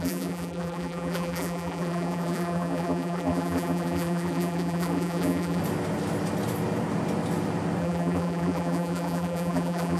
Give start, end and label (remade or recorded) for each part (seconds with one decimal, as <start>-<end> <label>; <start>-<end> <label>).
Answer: 0.0-5.6 remade; 5.6-7.8 recorded; 7.8-10.0 remade